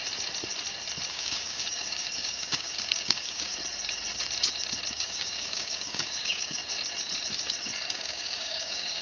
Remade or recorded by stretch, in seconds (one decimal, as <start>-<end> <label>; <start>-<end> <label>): 0.0-1.1 recorded; 1.1-3.5 remade; 3.5-4.9 recorded; 4.9-6.6 remade; 6.6-7.9 recorded; 7.9-9.0 remade